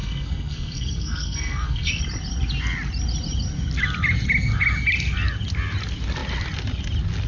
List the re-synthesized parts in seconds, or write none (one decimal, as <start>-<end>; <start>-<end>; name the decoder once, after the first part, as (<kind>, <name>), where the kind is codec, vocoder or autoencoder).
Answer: 0.0-2.0 (codec, SNAC)